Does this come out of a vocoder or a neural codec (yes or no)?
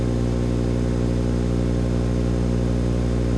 no